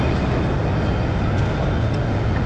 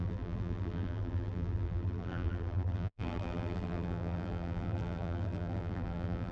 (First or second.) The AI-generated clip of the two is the second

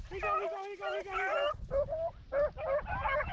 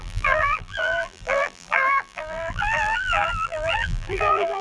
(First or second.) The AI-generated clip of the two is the second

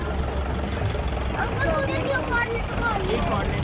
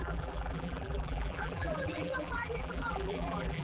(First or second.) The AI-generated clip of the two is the second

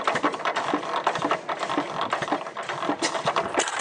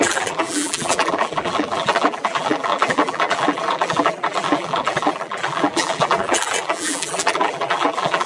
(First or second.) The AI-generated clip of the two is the second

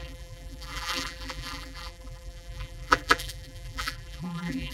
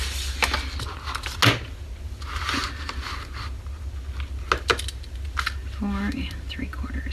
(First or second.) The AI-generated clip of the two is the first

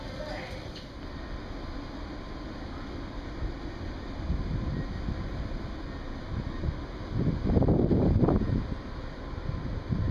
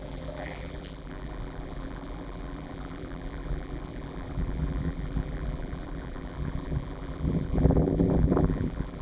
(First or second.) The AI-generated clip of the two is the second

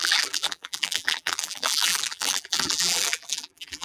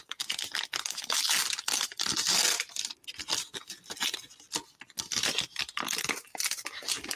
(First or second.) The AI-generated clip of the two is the first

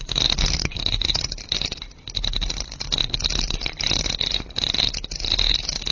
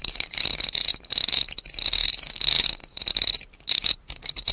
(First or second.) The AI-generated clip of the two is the second